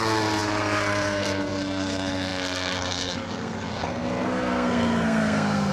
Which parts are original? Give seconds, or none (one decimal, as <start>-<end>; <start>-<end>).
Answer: none

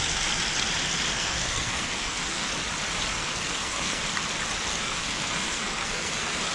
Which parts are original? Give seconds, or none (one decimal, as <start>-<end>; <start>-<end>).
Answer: 0.0-1.1; 2.5-3.1; 4.0-4.7